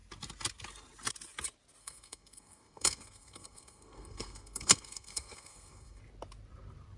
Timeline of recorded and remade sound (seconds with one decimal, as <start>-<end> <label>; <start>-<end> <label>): 0.0-1.8 recorded; 1.8-6.0 remade; 6.0-7.0 recorded